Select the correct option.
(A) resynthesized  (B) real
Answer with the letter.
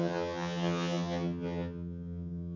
A